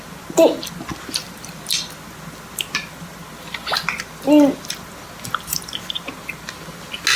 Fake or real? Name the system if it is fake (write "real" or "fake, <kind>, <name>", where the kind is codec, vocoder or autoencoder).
real